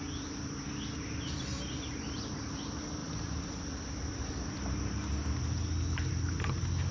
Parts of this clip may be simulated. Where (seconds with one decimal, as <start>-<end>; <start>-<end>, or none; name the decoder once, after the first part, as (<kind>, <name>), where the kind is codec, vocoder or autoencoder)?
none